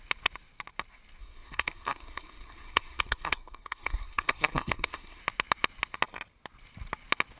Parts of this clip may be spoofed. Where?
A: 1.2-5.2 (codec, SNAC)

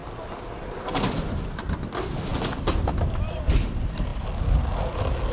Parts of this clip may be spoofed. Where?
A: none

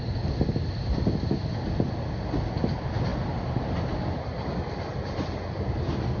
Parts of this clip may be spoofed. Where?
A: none

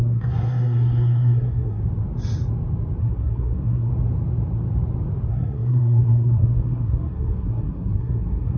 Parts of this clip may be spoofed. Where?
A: 0.0-1.8 (codec, SNAC); 3.0-3.9; 5.3-8.6

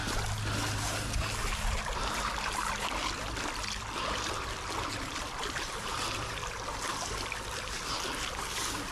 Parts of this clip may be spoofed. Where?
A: 5.6-6.8 (vocoder, BigVGAN v2)